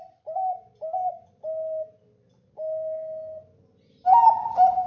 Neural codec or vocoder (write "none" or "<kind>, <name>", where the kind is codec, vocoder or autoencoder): none